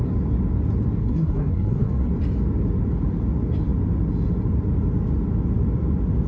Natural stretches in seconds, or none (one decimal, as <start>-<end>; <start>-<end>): 0.0-1.0; 2.1-6.3